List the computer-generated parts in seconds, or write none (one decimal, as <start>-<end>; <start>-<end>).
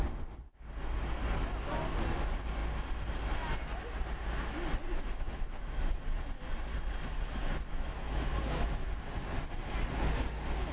4.9-6.0; 7.7-8.3